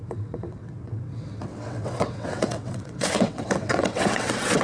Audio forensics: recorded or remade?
remade